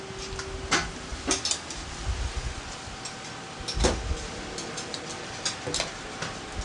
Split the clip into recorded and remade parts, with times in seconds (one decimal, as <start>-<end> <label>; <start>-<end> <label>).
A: 0.0-6.6 recorded